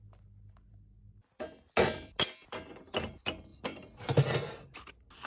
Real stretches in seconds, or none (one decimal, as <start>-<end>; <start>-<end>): 0.0-5.3